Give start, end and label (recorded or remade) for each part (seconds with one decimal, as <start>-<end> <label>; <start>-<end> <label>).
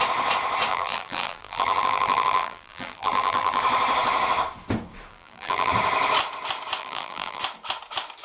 0.0-0.7 recorded; 0.7-3.6 remade; 3.6-5.1 recorded; 5.1-5.7 remade; 5.7-6.8 recorded; 6.8-7.4 remade; 7.4-8.2 recorded